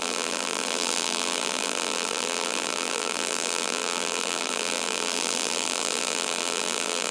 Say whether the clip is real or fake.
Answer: fake